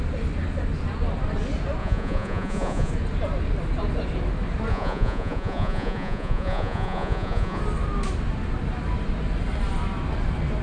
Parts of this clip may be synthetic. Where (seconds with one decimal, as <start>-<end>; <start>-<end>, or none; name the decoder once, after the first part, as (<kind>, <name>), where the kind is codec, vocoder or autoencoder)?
1.8-2.9 (vocoder, Vocos); 4.7-7.6